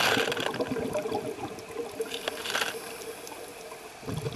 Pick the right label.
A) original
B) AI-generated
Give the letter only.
A